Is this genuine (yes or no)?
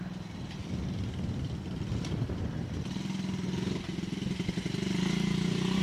yes